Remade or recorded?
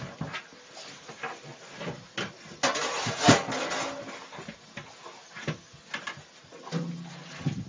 recorded